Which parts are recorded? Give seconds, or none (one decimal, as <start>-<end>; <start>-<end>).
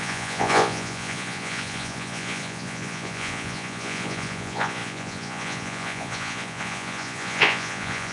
none